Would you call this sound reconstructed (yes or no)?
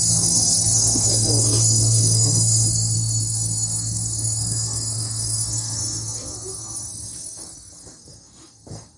yes